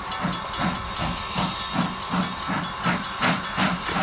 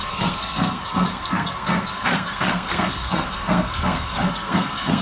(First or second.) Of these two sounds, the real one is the first